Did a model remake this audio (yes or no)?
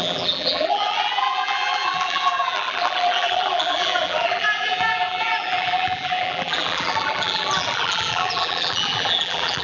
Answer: yes